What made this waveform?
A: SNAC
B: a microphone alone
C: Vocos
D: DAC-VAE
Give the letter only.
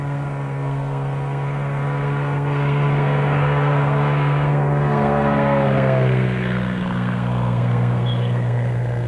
A